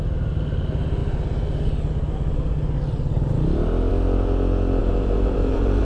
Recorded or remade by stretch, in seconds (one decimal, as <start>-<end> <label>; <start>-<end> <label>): 0.0-4.8 recorded; 4.8-5.8 remade